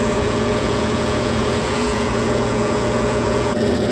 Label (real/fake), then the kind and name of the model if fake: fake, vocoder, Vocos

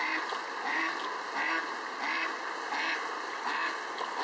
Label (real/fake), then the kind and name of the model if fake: real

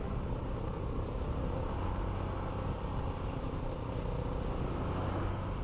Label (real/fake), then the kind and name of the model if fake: real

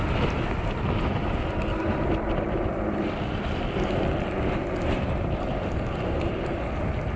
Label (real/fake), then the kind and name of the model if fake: real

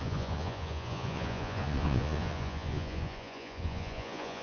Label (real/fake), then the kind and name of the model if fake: fake, vocoder, Vocos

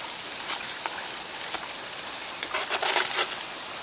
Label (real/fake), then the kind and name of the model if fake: real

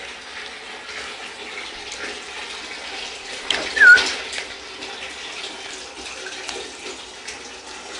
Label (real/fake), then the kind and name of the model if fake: real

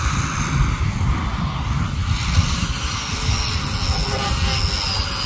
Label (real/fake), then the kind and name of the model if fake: real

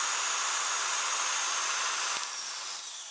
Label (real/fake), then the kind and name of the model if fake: real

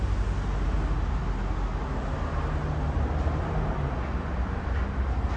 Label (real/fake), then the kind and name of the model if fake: real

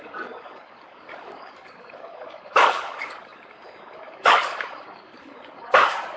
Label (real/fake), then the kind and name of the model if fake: fake, codec, DAC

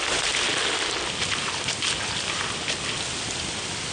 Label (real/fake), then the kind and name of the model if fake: real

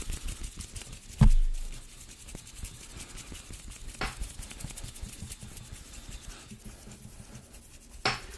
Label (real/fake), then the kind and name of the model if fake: real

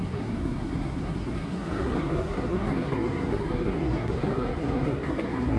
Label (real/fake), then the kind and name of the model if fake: fake, codec, SNAC